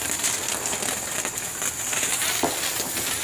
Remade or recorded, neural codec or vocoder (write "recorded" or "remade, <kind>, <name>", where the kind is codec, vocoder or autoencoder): recorded